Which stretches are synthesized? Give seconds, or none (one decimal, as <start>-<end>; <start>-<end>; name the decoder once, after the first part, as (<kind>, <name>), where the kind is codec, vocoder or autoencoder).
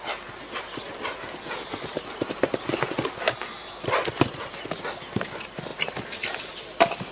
none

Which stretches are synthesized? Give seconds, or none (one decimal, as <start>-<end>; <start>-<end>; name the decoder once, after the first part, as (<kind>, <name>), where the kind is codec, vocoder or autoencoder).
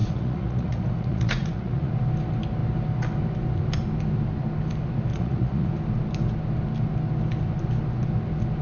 0.0-1.9 (vocoder, Vocos); 5.1-5.7